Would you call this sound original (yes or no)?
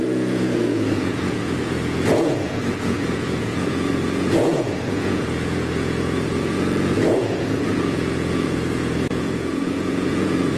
no